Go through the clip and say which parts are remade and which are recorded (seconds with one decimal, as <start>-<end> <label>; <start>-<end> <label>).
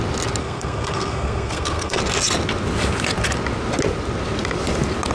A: 0.0-0.4 recorded; 0.4-2.0 remade; 2.0-5.1 recorded